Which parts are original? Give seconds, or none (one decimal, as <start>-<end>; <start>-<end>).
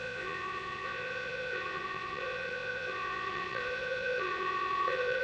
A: none